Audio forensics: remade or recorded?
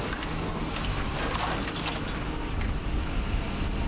recorded